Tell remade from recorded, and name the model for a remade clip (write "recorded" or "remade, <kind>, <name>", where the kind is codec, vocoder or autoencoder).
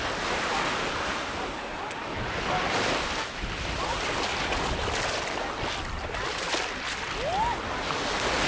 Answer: recorded